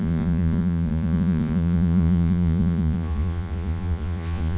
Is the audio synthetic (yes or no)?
yes